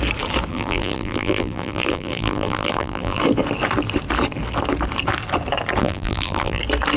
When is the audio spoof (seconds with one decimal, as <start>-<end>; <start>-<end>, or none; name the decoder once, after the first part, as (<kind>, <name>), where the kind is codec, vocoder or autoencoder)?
0.5-3.2 (vocoder, BigVGAN v2); 5.8-6.6